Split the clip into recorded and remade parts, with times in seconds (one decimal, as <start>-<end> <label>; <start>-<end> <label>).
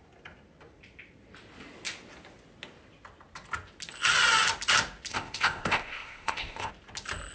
0.0-5.1 recorded; 5.1-6.7 remade; 6.7-7.3 recorded